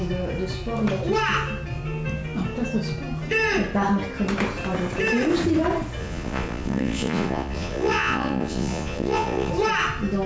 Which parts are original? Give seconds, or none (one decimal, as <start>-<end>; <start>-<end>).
0.0-6.0; 9.5-10.3